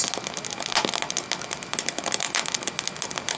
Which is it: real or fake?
real